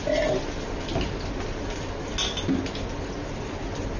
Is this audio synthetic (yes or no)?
no